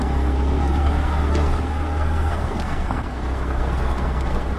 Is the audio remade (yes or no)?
yes